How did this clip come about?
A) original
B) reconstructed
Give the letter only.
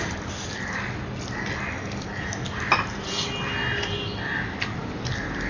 A